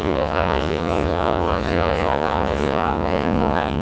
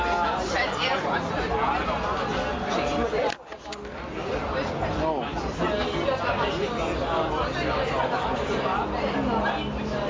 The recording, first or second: second